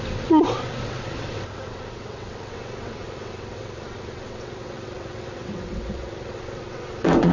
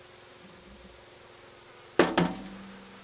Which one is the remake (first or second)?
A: first